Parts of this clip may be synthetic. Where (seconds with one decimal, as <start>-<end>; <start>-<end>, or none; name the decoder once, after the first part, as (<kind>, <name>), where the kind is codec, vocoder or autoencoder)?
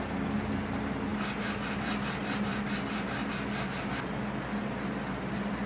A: none